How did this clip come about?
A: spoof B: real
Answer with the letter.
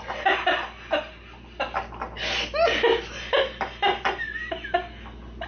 B